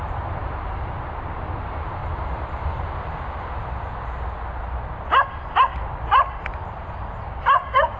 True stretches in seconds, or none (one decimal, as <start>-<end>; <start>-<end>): 2.0-5.7